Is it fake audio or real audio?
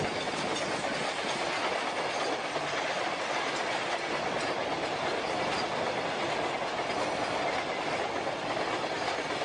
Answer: real